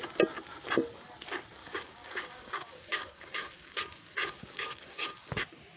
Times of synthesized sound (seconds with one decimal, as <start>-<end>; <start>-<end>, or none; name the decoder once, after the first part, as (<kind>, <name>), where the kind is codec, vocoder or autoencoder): 1.6-5.1 (codec, DAC)